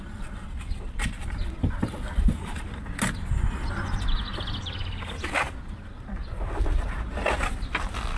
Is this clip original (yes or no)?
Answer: yes